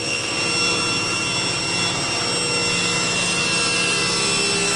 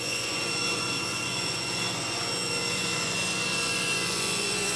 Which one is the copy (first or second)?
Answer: second